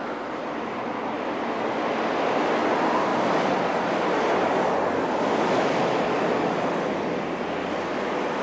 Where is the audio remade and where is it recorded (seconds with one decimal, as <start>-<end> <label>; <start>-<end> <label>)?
0.0-8.4 recorded